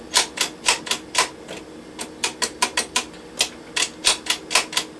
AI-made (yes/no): no